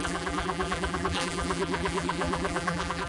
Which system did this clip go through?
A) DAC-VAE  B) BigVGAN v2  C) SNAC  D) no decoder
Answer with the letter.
B